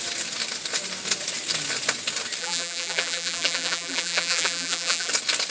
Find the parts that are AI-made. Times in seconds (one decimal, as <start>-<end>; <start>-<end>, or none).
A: 2.4-5.1